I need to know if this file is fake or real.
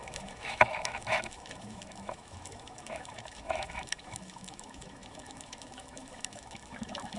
fake